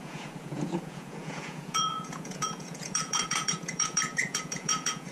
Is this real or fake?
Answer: fake